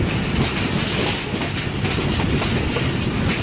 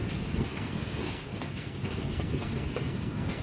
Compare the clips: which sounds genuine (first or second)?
first